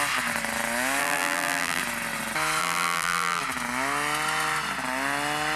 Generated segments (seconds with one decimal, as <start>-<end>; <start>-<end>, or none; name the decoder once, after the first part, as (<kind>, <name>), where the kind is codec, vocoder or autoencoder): 1.0-1.8 (vocoder, BigVGAN v2); 2.6-3.4